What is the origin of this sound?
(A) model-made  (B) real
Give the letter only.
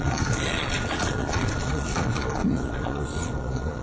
A